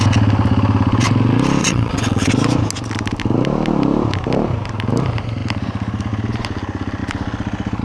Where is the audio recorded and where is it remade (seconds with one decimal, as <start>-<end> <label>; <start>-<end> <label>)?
0.0-1.6 recorded; 1.6-2.3 remade; 2.3-7.8 recorded